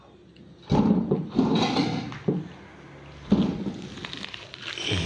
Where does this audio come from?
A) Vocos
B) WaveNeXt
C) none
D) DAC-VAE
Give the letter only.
C